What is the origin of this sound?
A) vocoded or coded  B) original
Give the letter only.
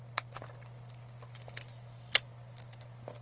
B